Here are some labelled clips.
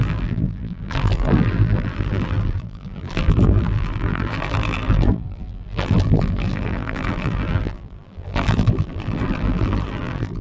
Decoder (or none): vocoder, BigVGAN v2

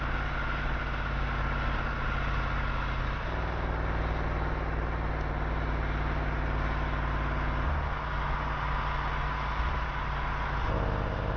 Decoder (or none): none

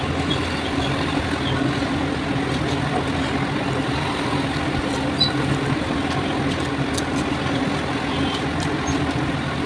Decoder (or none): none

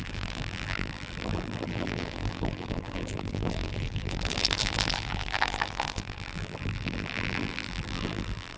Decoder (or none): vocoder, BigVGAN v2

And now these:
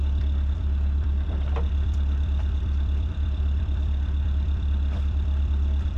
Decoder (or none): vocoder, BigVGAN v2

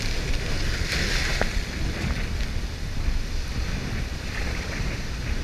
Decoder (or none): none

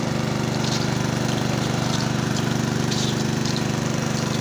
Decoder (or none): vocoder, BigVGAN v2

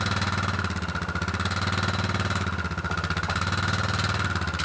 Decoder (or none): none